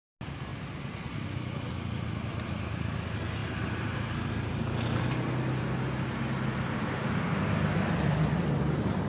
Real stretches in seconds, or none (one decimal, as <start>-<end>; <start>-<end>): 0.0-9.1